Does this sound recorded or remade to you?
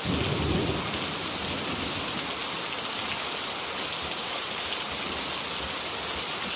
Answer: recorded